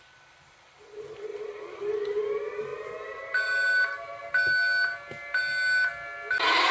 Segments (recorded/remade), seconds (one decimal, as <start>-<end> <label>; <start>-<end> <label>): 0.0-1.3 recorded; 1.3-2.2 remade; 2.2-6.7 recorded